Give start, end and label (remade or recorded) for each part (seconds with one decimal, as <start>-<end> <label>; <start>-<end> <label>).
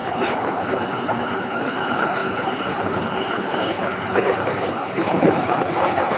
0.0-6.2 remade